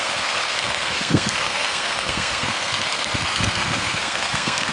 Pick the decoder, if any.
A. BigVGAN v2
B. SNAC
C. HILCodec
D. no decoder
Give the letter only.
B